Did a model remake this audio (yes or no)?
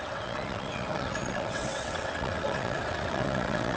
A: yes